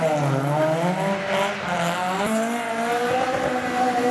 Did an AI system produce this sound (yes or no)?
no